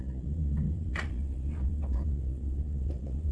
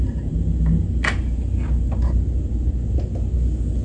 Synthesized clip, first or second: first